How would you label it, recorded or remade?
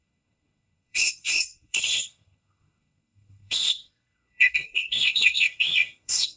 remade